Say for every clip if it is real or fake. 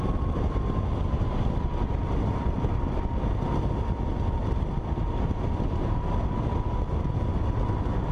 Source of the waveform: real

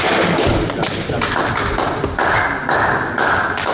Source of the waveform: real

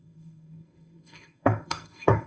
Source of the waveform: fake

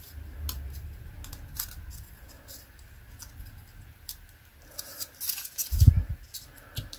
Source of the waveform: real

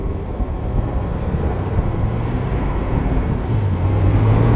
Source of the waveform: fake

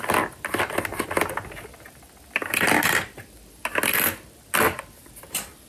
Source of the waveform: real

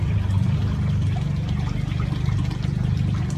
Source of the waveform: real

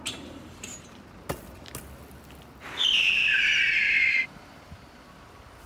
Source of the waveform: real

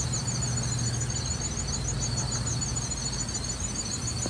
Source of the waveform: real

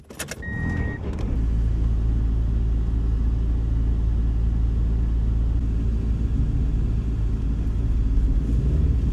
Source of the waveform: real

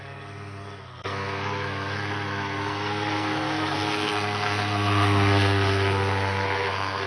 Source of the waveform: fake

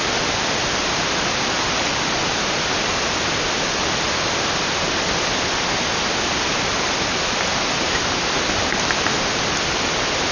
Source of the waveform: real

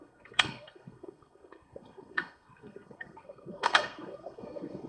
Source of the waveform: fake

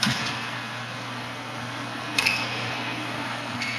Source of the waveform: fake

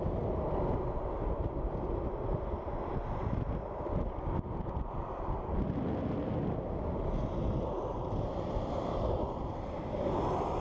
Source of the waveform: real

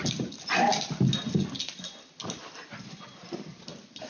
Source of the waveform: real